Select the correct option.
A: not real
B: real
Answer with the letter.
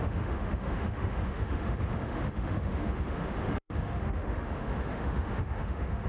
A